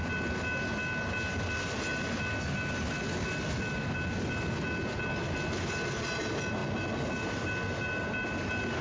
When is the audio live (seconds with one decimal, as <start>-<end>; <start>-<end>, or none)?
0.0-8.8